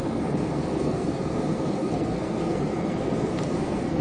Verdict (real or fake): fake